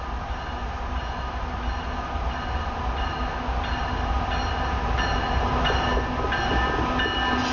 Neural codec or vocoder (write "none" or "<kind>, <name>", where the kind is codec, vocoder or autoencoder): none